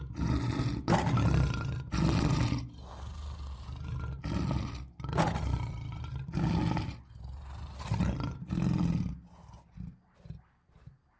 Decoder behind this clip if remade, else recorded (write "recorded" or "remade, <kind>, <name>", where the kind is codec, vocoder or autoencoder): recorded